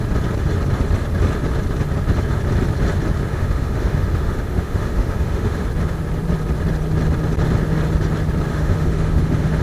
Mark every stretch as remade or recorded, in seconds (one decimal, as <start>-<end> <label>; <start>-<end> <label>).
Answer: 0.0-3.3 recorded; 3.3-5.6 remade; 5.6-8.5 recorded; 8.5-9.6 remade